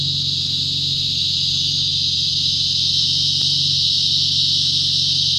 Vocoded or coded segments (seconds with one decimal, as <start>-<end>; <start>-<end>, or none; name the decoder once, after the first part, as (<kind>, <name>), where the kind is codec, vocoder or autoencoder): none